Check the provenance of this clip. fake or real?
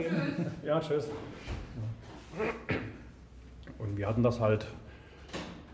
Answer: real